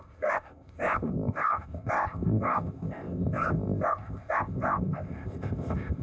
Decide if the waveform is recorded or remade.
remade